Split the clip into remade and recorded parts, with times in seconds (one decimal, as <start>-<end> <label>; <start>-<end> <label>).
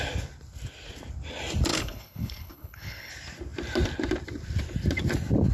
0.0-1.7 recorded; 1.7-3.1 remade; 3.1-5.5 recorded